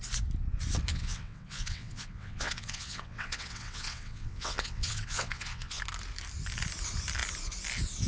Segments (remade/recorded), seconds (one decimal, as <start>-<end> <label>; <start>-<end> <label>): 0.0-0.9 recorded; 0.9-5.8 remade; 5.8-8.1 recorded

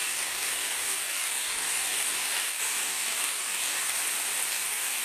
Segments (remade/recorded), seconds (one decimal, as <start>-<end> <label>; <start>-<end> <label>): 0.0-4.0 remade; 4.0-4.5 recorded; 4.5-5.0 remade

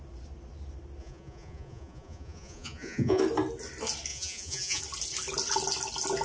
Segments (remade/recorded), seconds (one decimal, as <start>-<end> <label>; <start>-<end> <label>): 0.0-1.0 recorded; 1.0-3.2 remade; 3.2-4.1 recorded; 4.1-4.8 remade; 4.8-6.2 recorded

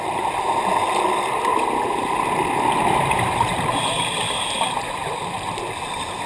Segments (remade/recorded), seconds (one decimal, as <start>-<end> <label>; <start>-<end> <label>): 0.0-6.3 recorded